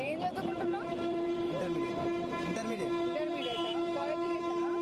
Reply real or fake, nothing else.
fake